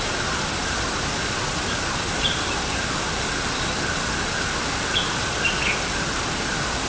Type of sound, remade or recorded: recorded